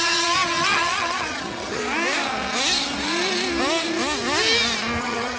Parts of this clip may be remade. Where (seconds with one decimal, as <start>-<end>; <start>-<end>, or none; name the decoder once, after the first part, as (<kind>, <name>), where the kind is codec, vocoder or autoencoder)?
0.0-1.8 (vocoder, HiFi-GAN); 5.0-5.4